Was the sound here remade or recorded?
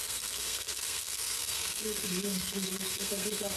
remade